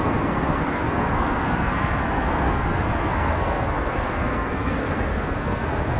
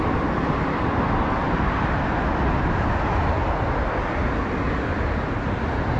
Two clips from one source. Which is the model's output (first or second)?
first